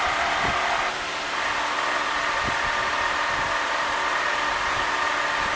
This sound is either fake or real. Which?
real